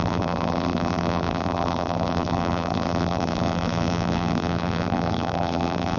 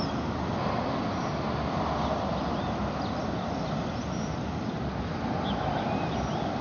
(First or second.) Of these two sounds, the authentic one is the second